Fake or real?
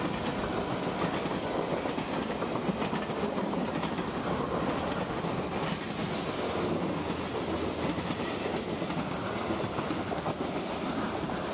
real